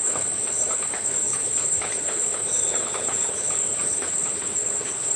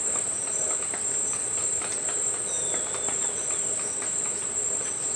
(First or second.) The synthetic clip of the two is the first